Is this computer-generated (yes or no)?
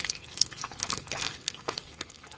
yes